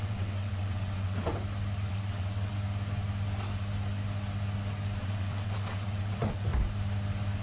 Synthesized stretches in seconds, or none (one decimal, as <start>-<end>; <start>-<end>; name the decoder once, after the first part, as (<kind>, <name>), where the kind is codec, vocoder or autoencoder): 0.0-1.3 (vocoder, WaveNeXt); 1.9-2.5; 5.0-6.5